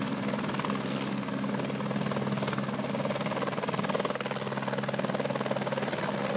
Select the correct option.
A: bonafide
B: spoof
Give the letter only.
A